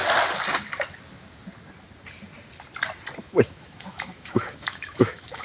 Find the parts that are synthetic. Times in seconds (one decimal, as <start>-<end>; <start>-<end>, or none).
3.2-5.4